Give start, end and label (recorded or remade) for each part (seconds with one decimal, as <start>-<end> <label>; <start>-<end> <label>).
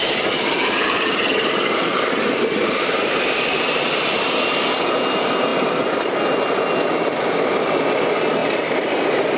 0.0-4.4 remade; 4.4-8.4 recorded; 8.4-8.9 remade; 8.9-9.4 recorded